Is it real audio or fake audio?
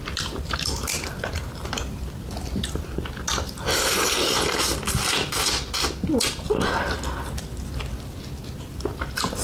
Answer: real